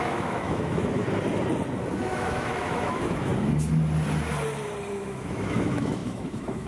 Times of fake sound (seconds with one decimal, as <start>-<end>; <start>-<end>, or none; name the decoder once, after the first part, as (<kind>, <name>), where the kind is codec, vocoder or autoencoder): 0.0-1.0 (autoencoder, DAC-VAE); 2.0-3.3; 4.9-6.7